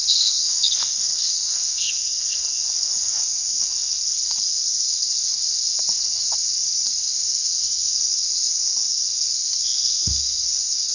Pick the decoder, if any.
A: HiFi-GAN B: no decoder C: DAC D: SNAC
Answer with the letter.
D